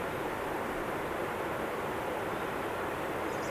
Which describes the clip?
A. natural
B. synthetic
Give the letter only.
A